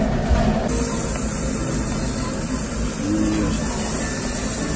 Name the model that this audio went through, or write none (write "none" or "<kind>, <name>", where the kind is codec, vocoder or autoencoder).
none